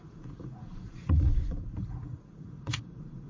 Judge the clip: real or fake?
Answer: fake